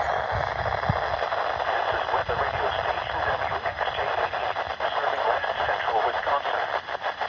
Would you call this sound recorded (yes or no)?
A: yes